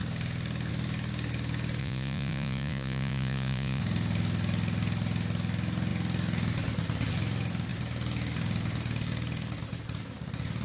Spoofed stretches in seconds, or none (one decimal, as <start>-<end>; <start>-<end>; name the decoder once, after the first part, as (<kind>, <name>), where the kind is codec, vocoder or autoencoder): 1.8-3.8 (vocoder, Vocos)